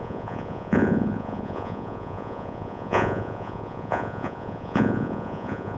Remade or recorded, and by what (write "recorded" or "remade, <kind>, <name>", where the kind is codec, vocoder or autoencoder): remade, vocoder, Vocos